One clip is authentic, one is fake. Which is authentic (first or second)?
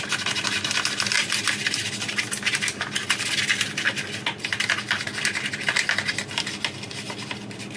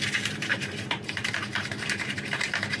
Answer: first